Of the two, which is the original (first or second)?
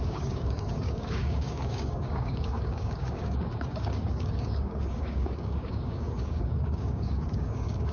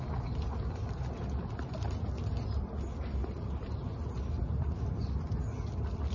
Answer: second